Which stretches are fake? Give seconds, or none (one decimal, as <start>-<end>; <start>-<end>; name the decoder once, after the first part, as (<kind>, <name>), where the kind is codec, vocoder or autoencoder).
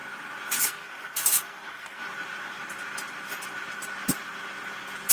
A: 0.6-2.0 (codec, SNAC)